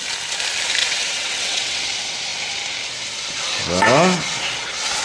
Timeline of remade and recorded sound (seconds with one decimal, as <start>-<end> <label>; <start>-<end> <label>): 0.0-0.8 recorded; 0.8-1.8 remade; 1.8-5.0 recorded